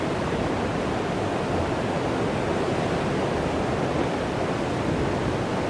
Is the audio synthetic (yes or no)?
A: no